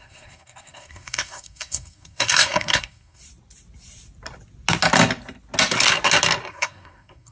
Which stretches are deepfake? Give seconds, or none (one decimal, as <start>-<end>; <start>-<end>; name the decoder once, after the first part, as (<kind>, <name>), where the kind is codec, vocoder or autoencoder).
0.0-3.2 (codec, SNAC); 6.5-7.3